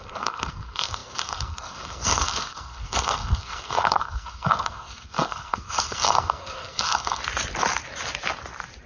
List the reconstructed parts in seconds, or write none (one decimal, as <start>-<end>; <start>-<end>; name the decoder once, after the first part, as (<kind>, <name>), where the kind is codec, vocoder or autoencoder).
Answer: 0.0-7.2 (codec, SNAC)